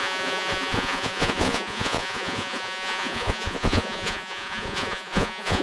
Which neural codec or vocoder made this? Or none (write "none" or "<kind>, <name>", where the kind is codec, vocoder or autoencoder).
vocoder, Vocos